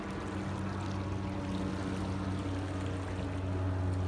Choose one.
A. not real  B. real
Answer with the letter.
B